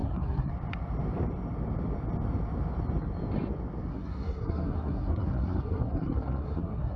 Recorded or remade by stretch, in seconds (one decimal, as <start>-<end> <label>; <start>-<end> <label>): 0.0-0.5 remade; 0.5-3.9 recorded; 3.9-7.0 remade